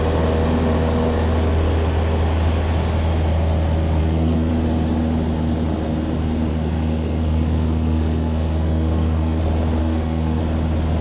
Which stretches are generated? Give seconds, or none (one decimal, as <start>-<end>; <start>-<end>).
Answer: 4.0-4.5; 6.5-9.4; 9.8-10.4